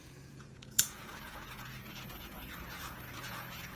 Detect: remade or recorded remade